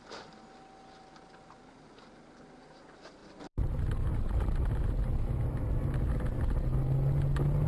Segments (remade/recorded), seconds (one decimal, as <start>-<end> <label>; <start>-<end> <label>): 0.0-3.2 recorded; 3.2-6.8 remade; 6.8-7.7 recorded